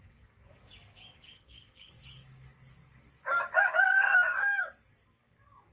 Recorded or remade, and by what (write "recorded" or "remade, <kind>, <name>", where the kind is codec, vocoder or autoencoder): remade, codec, DAC